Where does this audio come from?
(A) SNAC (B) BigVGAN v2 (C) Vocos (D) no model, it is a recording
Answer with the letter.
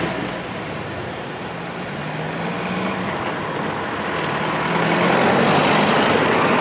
D